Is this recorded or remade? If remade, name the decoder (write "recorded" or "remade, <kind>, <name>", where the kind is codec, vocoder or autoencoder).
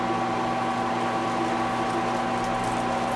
recorded